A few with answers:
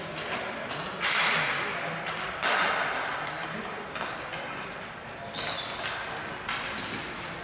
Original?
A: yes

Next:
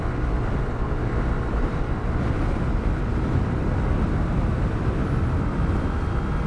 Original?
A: yes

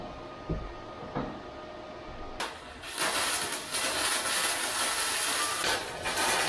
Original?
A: yes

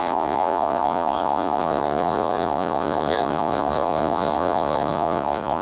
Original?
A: no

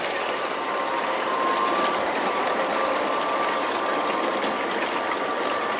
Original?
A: yes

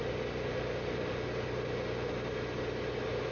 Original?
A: yes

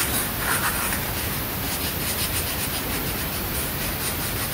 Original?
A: yes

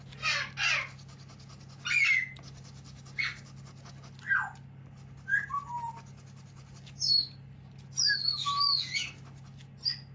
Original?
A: yes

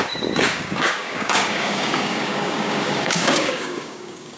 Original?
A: no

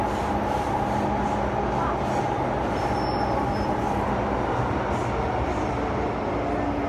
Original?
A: yes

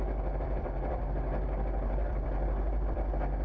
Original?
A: no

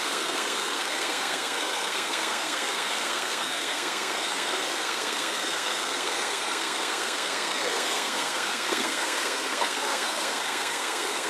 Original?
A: no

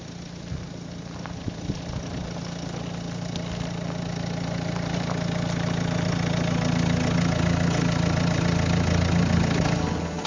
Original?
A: yes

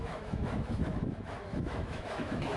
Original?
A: no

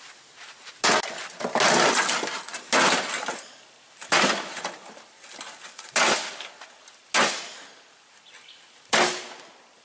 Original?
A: yes